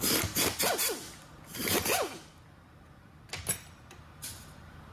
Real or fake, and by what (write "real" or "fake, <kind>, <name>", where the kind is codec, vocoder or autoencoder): real